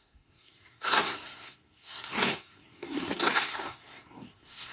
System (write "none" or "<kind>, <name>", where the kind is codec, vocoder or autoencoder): codec, SNAC